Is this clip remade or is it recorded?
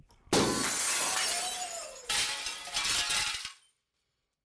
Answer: recorded